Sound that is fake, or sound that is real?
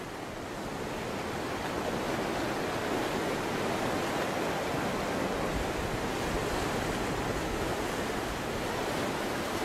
real